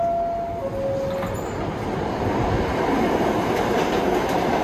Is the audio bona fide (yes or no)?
yes